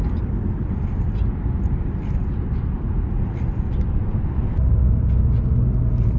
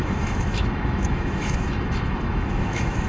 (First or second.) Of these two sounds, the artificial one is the second